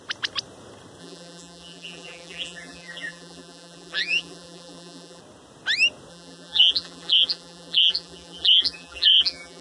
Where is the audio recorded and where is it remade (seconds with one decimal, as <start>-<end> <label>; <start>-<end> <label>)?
0.0-1.0 recorded; 1.0-5.2 remade; 5.2-6.1 recorded; 6.1-9.6 remade